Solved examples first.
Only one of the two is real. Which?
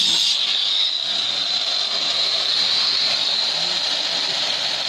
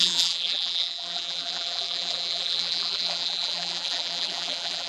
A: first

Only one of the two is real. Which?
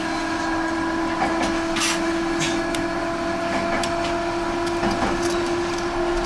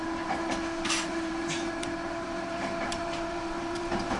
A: first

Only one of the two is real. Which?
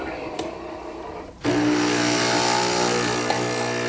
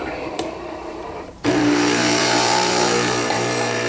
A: first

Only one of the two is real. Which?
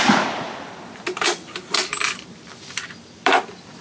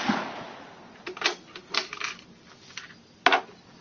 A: second